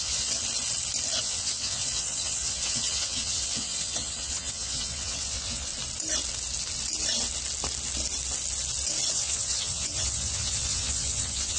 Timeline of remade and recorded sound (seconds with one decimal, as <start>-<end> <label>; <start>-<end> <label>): 0.0-0.4 remade; 0.4-1.2 recorded; 1.2-5.7 remade; 5.7-9.1 recorded; 9.1-11.6 remade